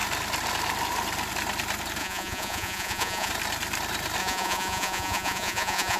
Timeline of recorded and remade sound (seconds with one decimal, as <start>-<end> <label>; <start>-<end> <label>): 0.0-2.0 recorded; 2.0-3.3 remade; 3.3-4.2 recorded; 4.2-6.0 remade